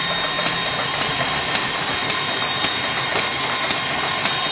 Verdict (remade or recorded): recorded